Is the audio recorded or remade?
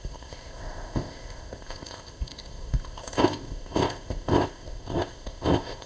remade